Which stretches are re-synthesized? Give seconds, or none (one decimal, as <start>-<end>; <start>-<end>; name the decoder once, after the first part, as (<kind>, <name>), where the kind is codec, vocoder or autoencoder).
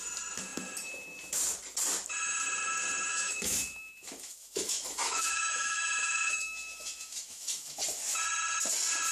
3.1-7.8 (autoencoder, DAC-VAE)